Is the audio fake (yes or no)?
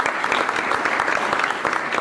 no